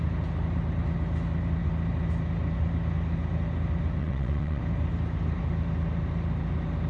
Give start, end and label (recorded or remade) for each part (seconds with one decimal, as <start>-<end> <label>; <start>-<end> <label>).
0.0-4.0 recorded; 4.0-4.6 remade; 4.6-6.9 recorded